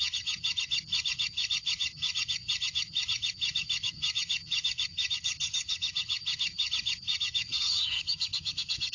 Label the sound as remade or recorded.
remade